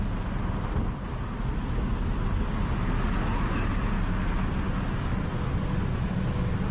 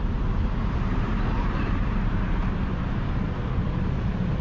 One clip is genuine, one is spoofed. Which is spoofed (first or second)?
second